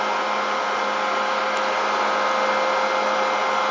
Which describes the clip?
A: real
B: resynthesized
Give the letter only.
A